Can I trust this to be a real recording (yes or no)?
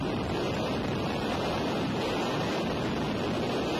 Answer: yes